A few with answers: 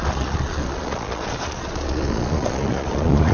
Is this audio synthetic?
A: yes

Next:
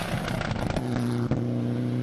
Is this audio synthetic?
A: no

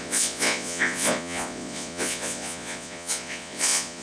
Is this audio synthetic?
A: yes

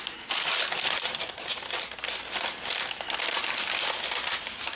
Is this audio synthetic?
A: yes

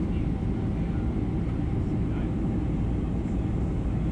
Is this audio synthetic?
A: no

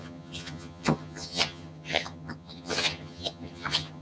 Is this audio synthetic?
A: yes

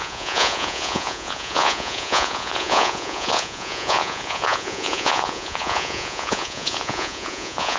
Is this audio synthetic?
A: yes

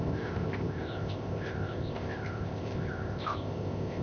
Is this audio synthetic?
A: yes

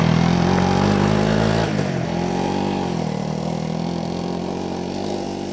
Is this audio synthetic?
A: no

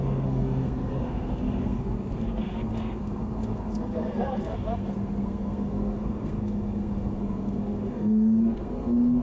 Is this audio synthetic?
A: yes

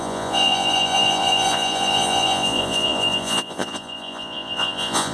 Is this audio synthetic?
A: yes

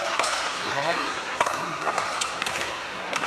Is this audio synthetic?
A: yes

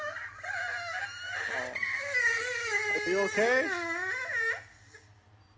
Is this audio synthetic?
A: no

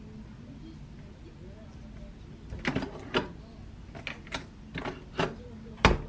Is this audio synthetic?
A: no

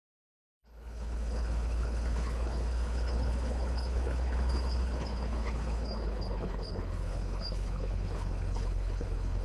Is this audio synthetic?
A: yes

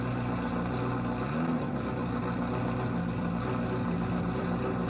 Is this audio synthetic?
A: no